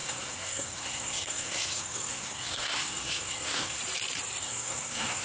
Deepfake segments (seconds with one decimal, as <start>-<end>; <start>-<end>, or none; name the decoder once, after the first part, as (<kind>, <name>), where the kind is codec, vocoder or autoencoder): 0.0-3.8 (codec, SNAC); 4.4-5.2